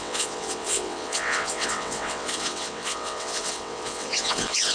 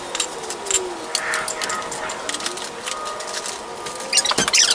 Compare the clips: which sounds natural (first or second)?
second